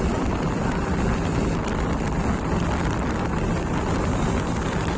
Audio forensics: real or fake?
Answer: real